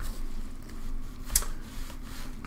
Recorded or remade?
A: recorded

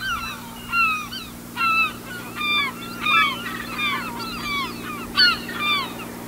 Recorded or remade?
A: recorded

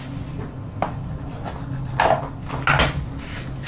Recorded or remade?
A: recorded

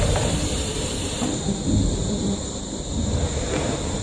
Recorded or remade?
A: remade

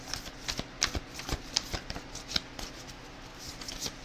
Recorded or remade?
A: recorded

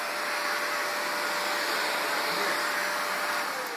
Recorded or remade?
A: recorded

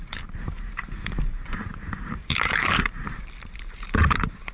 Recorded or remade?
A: remade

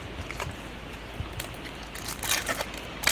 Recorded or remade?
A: recorded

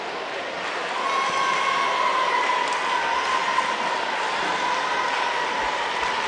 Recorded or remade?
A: recorded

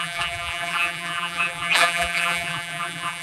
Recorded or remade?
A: remade